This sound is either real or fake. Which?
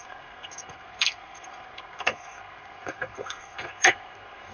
fake